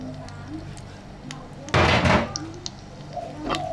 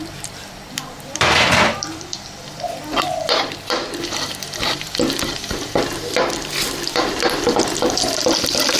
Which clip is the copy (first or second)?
second